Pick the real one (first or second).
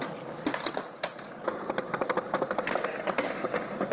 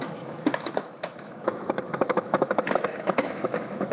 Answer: first